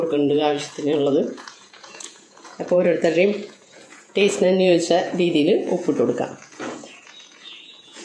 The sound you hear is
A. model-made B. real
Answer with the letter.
A